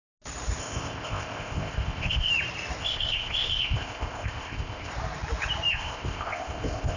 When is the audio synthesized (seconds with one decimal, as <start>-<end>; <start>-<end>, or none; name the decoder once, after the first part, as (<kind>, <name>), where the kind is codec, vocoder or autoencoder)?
0.6-2.3 (codec, ZipCodec); 2.8-4.9; 5.7-7.0